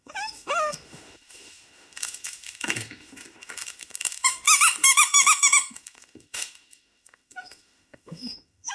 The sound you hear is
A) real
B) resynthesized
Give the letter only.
B